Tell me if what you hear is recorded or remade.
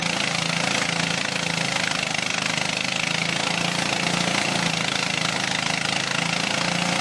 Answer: recorded